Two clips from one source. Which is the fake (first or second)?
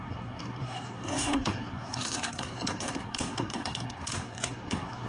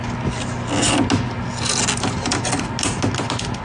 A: first